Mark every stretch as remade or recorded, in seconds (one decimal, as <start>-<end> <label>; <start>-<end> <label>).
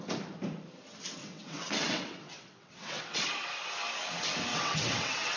0.0-1.2 recorded; 1.2-3.2 remade; 3.2-4.5 recorded; 4.5-5.4 remade